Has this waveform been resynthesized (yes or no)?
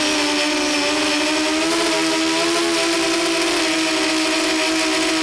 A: no